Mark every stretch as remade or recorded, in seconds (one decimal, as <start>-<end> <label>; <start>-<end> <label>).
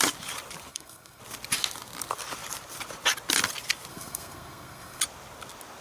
0.0-0.7 recorded; 0.7-1.2 remade; 1.2-3.9 recorded; 3.9-5.0 remade; 5.0-5.8 recorded